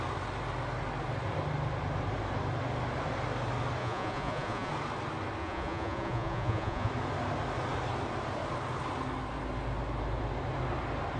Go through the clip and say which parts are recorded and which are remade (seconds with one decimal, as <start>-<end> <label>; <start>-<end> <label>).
0.0-3.8 recorded; 3.8-4.7 remade; 4.7-5.4 recorded; 5.4-6.9 remade; 6.9-11.2 recorded